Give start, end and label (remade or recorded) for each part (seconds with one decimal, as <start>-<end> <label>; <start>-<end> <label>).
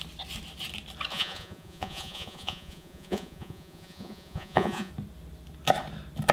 0.0-1.1 recorded; 1.1-4.9 remade; 4.9-6.3 recorded